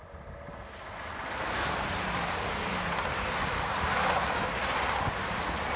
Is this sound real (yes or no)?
yes